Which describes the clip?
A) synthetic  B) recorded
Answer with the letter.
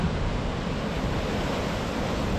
B